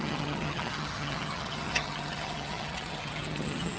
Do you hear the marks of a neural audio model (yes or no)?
yes